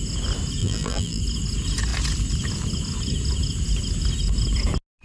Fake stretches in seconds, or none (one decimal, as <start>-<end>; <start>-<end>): 0.6-1.2